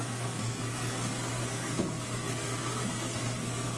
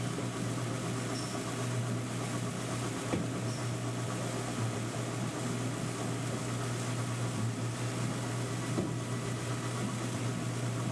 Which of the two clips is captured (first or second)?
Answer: second